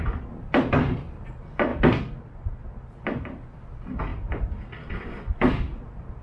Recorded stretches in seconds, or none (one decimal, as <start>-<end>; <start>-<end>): 1.7-2.5; 4.1-4.9